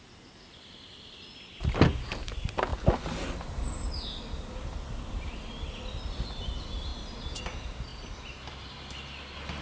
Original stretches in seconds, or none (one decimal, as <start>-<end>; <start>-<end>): 0.0-9.6